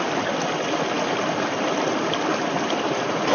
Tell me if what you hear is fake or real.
real